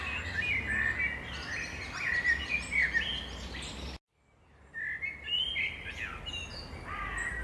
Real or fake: real